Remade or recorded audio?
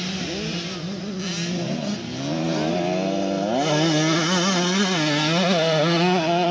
recorded